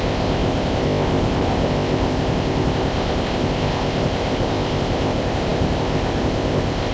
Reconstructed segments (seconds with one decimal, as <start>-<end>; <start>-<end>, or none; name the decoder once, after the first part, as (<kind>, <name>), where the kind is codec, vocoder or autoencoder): 0.0-6.9 (codec, ZipCodec)